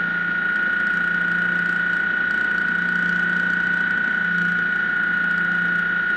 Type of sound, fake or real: real